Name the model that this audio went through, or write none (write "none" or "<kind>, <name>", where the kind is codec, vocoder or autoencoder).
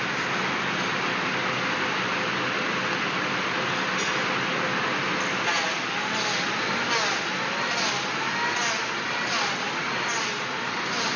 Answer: none